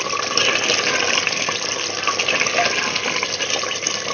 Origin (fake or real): real